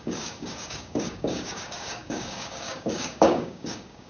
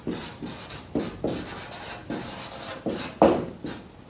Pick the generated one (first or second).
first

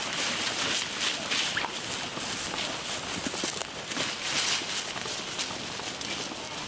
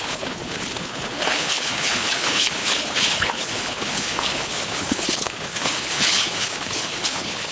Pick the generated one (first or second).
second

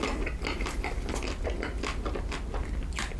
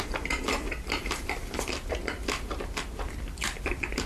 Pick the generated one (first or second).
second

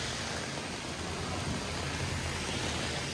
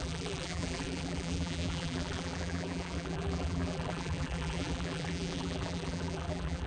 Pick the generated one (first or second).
second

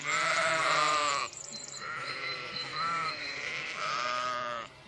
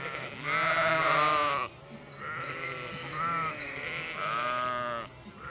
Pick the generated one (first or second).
first